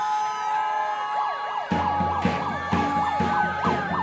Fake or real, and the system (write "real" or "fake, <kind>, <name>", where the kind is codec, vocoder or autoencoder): real